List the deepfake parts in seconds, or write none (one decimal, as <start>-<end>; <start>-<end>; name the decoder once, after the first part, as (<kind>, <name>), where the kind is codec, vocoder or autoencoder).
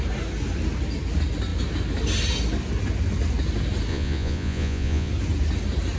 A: 3.9-5.1 (vocoder, Vocos)